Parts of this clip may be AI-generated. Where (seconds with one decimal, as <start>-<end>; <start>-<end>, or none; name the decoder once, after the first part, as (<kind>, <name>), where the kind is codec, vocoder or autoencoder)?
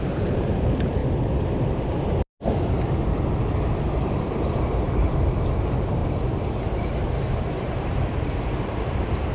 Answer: 0.0-1.0 (vocoder, BigVGAN v2); 4.1-6.0; 7.3-9.3